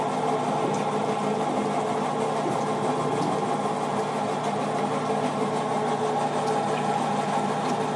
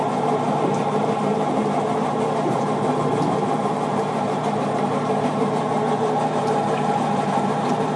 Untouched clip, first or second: first